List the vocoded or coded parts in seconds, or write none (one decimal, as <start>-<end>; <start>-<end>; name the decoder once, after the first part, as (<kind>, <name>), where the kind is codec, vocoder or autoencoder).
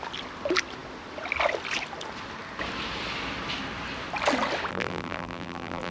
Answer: 4.7-5.9 (vocoder, BigVGAN v2)